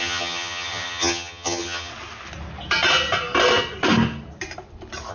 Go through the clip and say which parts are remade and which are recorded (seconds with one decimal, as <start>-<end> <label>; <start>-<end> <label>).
0.0-1.9 remade; 1.9-5.1 recorded